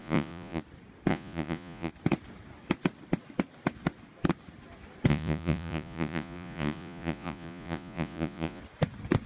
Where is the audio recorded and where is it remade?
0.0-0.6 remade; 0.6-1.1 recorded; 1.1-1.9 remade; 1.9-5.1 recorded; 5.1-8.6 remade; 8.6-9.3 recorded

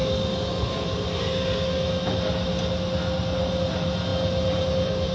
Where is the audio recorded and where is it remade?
0.0-5.1 recorded

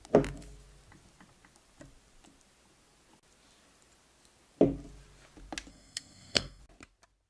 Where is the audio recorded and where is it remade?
0.0-5.7 recorded; 5.7-6.6 remade; 6.6-7.3 recorded

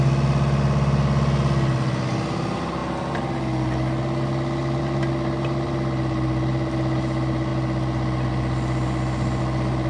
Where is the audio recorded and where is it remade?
0.0-9.9 recorded

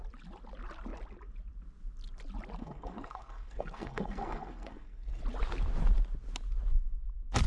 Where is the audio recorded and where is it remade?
0.0-2.6 recorded; 2.6-5.2 remade; 5.2-7.5 recorded

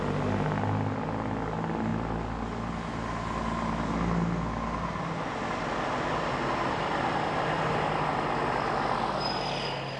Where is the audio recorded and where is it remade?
0.0-10.0 recorded

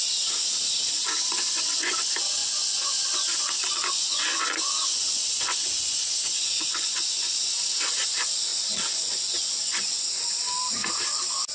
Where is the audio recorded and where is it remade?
0.0-1.3 recorded; 1.3-2.0 remade; 2.0-2.4 recorded; 2.4-7.5 remade; 7.5-8.5 recorded; 8.5-10.1 remade; 10.1-11.5 recorded